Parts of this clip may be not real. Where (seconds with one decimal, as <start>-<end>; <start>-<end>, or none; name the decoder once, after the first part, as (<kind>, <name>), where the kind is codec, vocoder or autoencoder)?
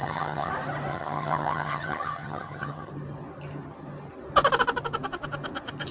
0.0-0.5 (vocoder, HiFi-GAN); 0.9-2.9